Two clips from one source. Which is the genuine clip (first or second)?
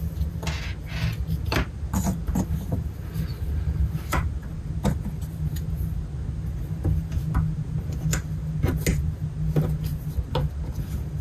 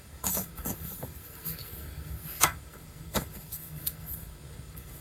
first